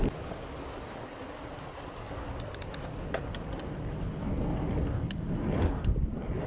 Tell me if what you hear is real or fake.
real